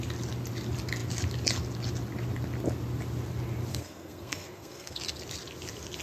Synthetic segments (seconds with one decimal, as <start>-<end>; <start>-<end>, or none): 3.7-5.0